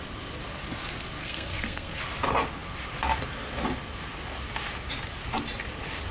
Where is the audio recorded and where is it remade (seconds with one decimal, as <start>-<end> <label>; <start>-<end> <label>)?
0.0-1.2 recorded; 1.2-2.0 remade; 2.0-6.1 recorded